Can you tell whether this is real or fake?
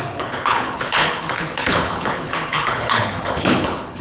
fake